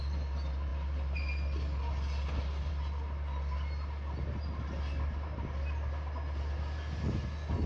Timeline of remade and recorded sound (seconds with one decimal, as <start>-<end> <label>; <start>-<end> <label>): 0.0-7.7 recorded